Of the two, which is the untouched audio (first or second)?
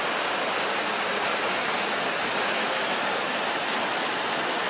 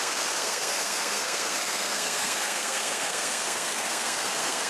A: first